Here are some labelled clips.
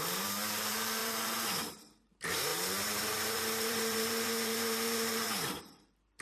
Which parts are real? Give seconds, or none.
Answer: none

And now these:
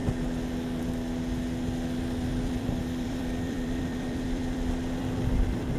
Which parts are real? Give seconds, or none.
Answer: 0.0-2.3

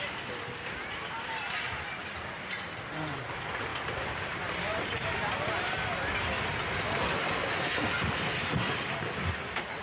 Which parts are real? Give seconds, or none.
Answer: 0.0-2.0; 3.3-3.7; 5.8-9.8

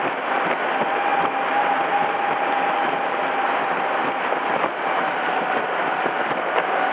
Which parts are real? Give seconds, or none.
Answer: 0.0-6.9

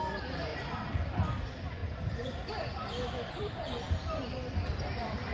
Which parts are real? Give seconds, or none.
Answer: 4.2-4.7

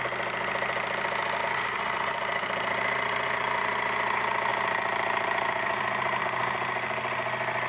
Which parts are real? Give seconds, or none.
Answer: 0.0-1.4; 3.6-4.5; 6.2-7.7

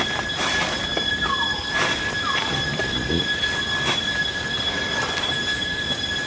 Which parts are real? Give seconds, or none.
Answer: 0.0-0.9; 4.7-6.3